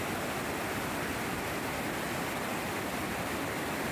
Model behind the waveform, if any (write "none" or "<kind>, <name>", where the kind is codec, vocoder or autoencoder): none